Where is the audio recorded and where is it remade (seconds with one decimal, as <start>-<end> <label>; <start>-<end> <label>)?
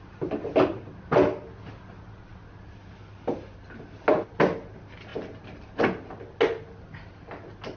0.0-7.8 recorded